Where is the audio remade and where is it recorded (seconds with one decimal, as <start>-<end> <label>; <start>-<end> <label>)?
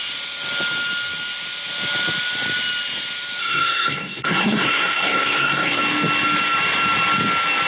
0.0-3.4 recorded; 3.4-5.8 remade; 5.8-7.7 recorded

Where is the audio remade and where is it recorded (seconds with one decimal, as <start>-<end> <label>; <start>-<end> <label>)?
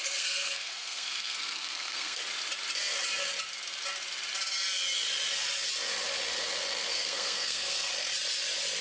0.0-2.2 remade; 2.2-6.9 recorded; 6.9-7.9 remade; 7.9-8.8 recorded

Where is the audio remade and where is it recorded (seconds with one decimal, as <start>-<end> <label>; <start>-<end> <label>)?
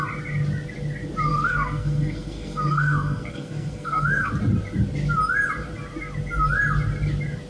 0.0-1.3 recorded; 1.3-4.3 remade; 4.3-7.5 recorded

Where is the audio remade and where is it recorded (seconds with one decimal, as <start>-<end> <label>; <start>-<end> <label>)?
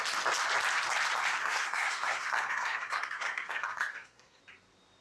0.0-1.4 recorded; 1.4-4.4 remade; 4.4-5.0 recorded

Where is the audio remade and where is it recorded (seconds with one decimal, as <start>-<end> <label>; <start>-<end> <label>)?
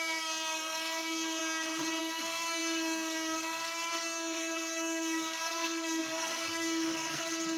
0.0-1.4 remade; 1.4-2.0 recorded; 2.0-7.6 remade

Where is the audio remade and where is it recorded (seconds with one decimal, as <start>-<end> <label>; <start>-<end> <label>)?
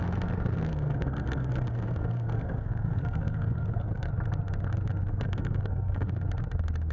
0.0-0.7 recorded; 0.7-4.1 remade; 4.1-5.1 recorded; 5.1-6.1 remade; 6.1-6.9 recorded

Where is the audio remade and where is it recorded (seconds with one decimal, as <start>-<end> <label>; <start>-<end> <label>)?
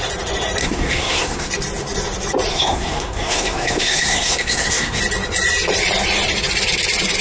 0.0-0.6 recorded; 0.6-1.5 remade; 1.5-2.5 recorded; 2.5-5.0 remade; 5.0-7.2 recorded